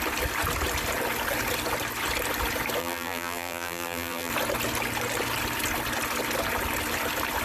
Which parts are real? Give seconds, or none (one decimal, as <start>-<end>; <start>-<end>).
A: 0.0-2.8; 4.3-7.4